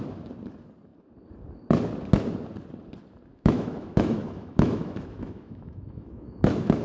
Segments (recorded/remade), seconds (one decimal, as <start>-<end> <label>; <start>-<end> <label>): 0.0-3.3 recorded; 3.3-6.8 remade